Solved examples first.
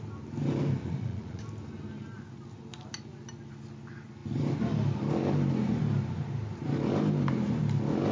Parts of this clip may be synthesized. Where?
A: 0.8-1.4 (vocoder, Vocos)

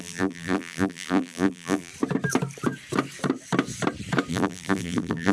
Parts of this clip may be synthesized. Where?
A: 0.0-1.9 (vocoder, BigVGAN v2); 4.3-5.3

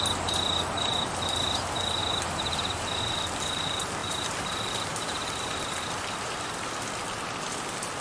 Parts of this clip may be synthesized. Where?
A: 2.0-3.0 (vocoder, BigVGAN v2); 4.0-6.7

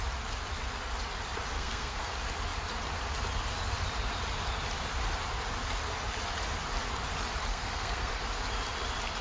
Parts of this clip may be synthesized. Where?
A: 1.5-2.1 (codec, SNAC); 7.5-8.1